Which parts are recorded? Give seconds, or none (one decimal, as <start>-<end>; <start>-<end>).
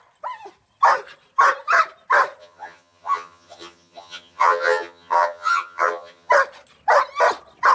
0.0-2.4; 6.3-7.7